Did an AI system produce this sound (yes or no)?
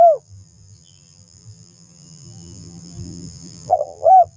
yes